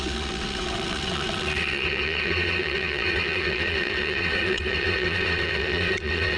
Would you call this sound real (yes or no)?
no